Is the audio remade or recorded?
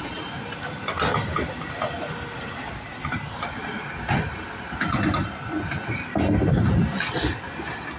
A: recorded